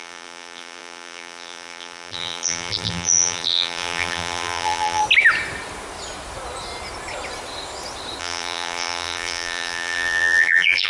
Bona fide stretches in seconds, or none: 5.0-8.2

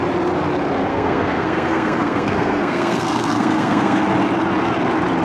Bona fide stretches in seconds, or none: 0.0-0.9; 4.0-5.2

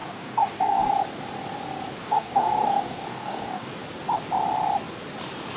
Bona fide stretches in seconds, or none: 0.9-2.0; 3.7-5.6

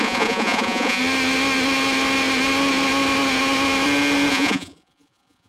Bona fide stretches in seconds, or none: 1.0-4.3

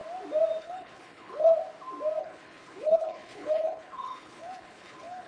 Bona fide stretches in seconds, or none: 0.0-0.6; 1.5-2.2

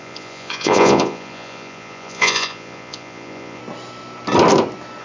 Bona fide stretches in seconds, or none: 3.6-5.0

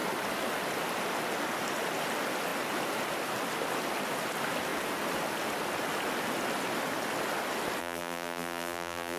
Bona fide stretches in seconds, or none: 0.0-7.8

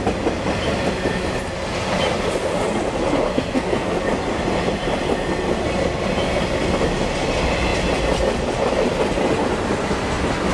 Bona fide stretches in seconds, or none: 0.0-3.3; 4.0-10.5